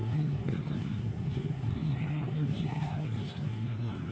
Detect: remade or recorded remade